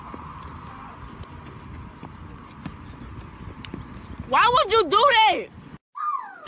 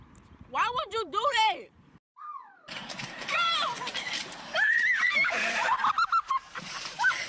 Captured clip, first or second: first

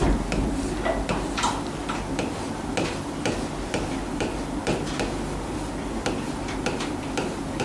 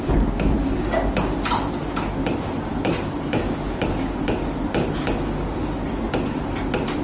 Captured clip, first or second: second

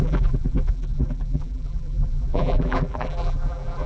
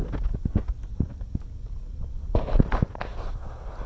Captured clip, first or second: second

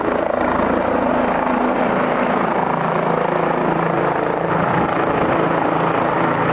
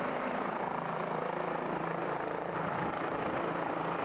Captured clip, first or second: first